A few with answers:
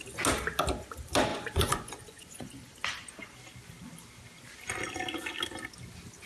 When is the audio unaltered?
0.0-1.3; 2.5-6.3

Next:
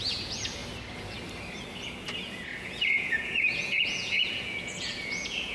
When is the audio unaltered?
0.6-2.2

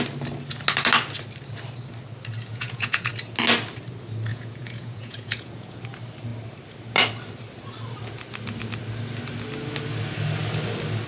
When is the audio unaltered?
0.0-2.5; 3.1-4.3; 5.8-11.1

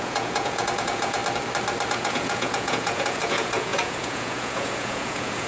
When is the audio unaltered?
1.2-1.9